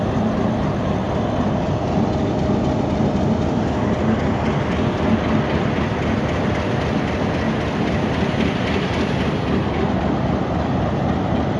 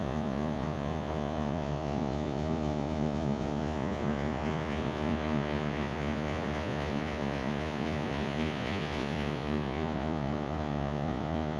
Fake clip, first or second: second